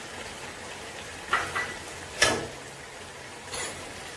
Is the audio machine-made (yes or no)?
no